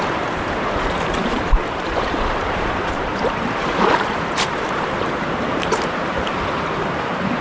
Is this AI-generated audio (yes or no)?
yes